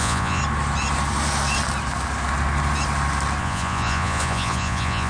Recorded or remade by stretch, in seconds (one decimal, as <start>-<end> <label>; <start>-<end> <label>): 0.0-0.4 remade; 0.4-3.4 recorded; 3.4-5.1 remade